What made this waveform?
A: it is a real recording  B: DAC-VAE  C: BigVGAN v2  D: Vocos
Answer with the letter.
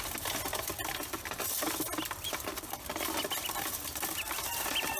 A